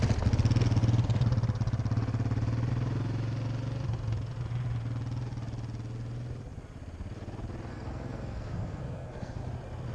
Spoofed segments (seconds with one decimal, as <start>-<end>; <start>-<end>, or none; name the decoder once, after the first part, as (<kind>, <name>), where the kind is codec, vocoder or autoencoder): 7.7-9.4 (codec, SNAC)